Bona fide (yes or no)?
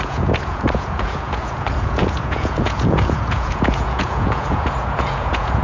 no